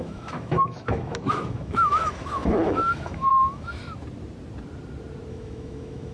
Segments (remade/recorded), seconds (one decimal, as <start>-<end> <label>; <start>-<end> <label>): 0.0-3.8 remade; 3.8-5.3 recorded; 5.3-6.1 remade